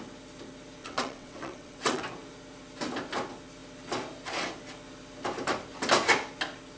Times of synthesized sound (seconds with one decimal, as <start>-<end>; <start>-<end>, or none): 0.8-2.0